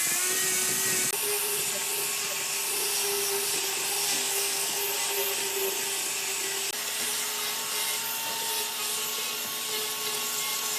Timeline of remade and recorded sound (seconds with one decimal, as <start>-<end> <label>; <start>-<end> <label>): 0.0-4.2 recorded; 4.2-4.8 remade; 4.8-10.8 recorded